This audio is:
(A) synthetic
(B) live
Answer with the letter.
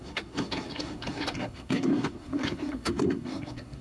A